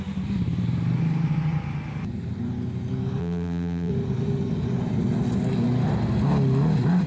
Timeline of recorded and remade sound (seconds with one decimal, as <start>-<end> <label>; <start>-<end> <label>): 0.0-3.2 recorded; 3.2-3.9 remade; 3.9-7.1 recorded